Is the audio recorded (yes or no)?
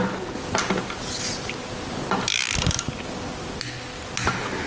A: yes